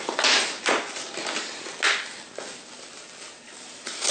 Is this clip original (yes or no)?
yes